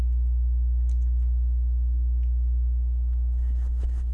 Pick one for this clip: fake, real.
real